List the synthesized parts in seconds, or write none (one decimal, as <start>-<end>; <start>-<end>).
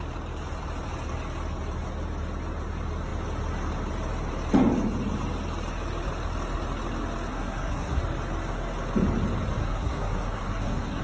7.3-8.0; 9.6-11.0